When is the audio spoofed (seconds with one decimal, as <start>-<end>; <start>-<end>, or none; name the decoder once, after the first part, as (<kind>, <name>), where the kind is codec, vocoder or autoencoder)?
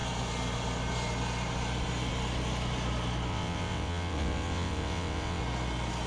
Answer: 3.3-5.4 (vocoder, WaveNeXt)